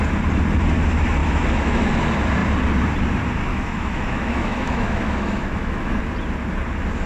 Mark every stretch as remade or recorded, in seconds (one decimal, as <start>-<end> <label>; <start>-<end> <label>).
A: 0.0-1.2 recorded; 1.2-1.9 remade; 1.9-3.5 recorded; 3.5-6.0 remade; 6.0-7.1 recorded